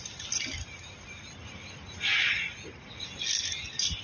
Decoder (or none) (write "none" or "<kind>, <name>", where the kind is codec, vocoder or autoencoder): none